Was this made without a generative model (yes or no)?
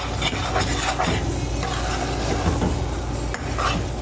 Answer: yes